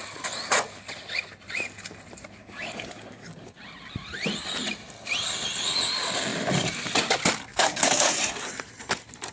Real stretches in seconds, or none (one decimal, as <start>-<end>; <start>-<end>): 0.0-2.4; 3.6-7.5; 8.1-9.3